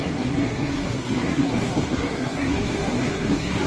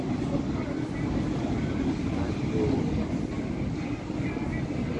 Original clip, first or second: second